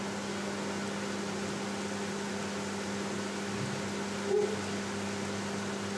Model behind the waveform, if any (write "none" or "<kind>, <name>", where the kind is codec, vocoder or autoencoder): none